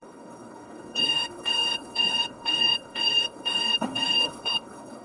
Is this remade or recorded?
remade